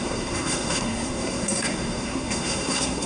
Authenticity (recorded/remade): remade